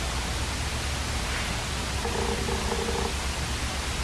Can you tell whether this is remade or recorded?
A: recorded